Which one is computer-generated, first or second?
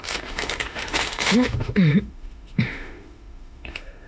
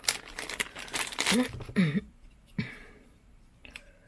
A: first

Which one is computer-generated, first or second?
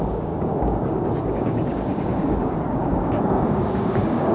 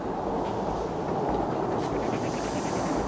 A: first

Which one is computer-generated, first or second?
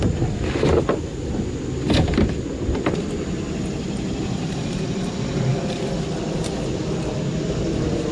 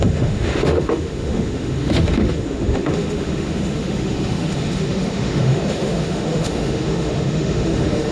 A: second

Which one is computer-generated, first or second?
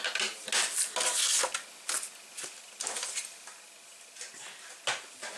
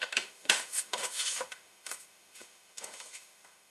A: second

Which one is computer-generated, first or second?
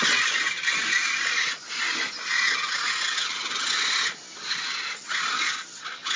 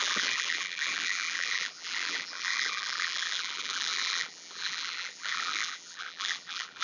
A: second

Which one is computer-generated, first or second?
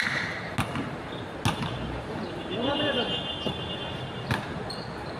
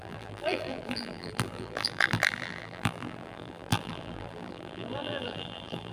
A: second